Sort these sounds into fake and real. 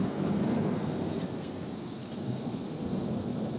fake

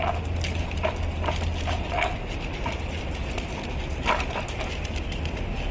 real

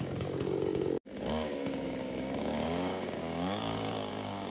fake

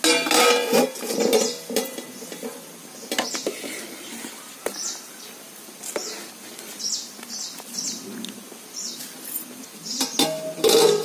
real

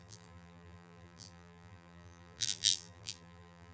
fake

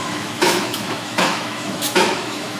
fake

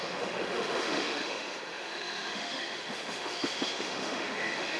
fake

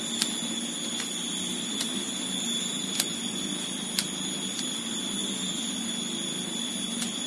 real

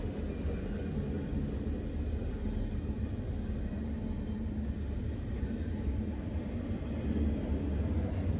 real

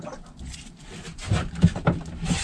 real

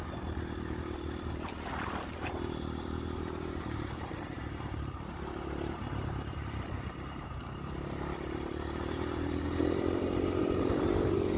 fake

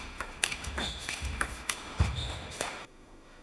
fake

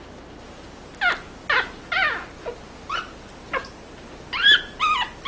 real